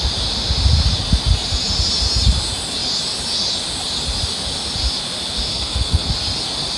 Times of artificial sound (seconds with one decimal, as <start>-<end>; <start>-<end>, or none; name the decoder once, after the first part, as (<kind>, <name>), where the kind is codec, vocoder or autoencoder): 5.5-6.1 (codec, SNAC)